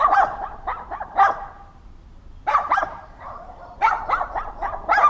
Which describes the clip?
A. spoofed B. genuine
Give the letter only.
B